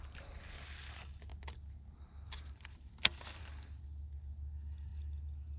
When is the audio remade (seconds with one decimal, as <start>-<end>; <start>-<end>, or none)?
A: none